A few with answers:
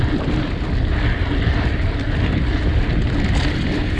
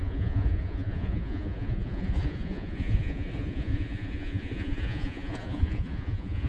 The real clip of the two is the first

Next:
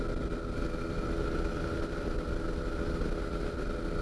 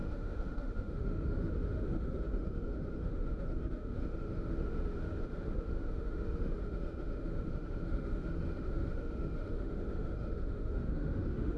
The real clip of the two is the first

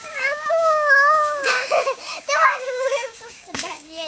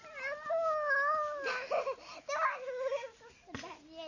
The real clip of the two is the second